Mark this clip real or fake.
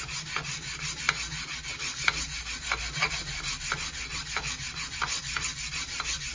real